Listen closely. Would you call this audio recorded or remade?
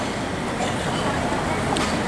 recorded